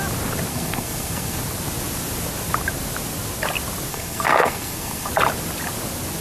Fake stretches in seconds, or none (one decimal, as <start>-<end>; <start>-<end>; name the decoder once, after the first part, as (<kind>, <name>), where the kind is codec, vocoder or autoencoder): 0.5-1.4 (codec, SNAC); 3.9-5.1